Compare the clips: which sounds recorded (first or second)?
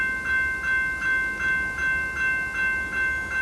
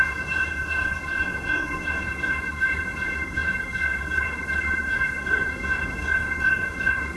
first